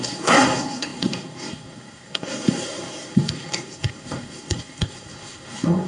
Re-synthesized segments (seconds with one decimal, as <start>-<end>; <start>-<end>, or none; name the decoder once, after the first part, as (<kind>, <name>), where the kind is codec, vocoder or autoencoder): 0.0-5.9 (codec, SNAC)